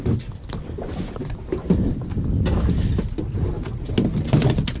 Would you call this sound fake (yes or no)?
no